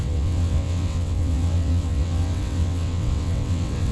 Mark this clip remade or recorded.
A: remade